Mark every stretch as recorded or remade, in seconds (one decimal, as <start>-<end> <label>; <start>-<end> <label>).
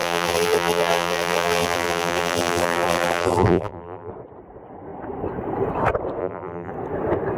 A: 0.0-4.1 remade; 4.1-6.2 recorded; 6.2-6.7 remade; 6.7-7.4 recorded